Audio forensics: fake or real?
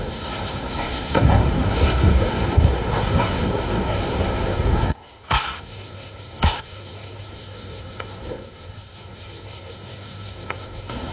fake